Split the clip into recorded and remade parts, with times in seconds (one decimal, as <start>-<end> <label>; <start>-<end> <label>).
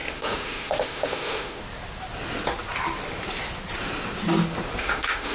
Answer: 0.0-1.6 remade; 1.6-4.8 recorded; 4.8-5.3 remade